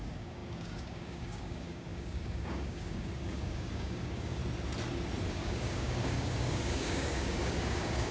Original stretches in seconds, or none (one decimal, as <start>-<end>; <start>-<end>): 4.4-5.3